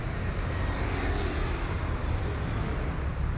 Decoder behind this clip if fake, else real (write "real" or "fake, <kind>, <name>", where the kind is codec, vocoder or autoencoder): real